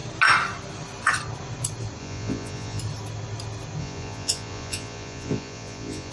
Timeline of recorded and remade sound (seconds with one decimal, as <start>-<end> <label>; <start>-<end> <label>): 0.0-2.0 recorded; 2.0-2.8 remade; 2.8-3.8 recorded; 3.8-6.1 remade